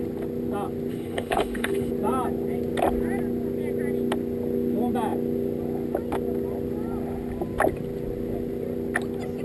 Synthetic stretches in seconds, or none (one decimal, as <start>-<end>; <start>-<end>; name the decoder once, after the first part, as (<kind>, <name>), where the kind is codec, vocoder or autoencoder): 0.9-1.9 (codec, HILCodec)